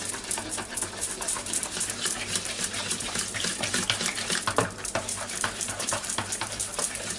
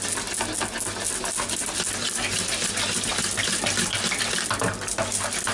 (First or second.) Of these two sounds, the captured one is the second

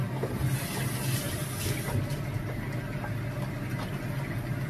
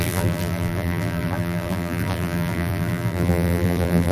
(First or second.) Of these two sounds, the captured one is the first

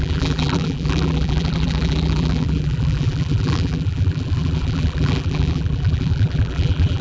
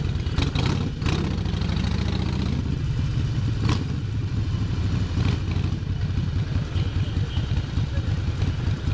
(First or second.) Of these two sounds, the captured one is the second